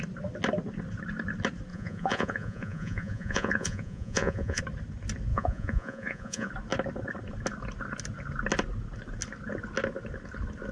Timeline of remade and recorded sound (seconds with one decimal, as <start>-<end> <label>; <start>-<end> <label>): 0.0-1.7 recorded; 1.7-4.6 remade; 4.6-5.3 recorded; 5.3-6.5 remade; 6.5-10.7 recorded